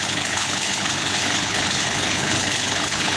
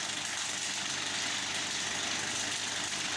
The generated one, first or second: first